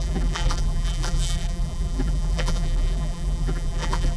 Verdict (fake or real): fake